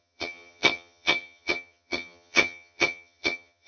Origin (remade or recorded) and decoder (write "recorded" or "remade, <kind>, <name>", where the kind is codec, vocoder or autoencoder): remade, vocoder, HiFi-GAN